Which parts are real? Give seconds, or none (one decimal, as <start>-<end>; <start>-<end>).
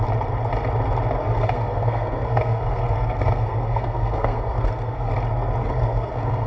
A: 0.0-1.2; 5.1-5.6